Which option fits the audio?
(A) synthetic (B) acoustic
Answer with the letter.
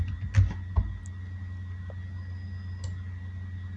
B